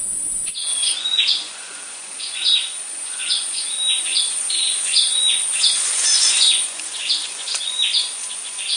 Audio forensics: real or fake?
fake